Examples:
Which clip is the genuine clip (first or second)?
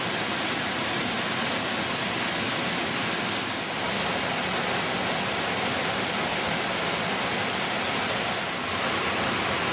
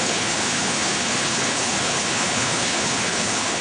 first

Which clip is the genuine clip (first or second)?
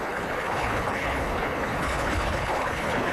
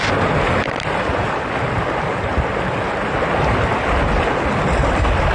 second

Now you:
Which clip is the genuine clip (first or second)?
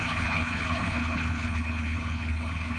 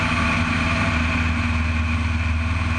second